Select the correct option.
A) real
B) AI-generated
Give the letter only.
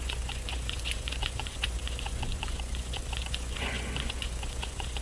B